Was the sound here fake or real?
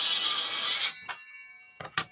real